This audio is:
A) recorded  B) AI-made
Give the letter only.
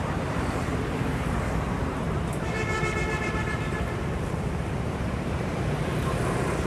B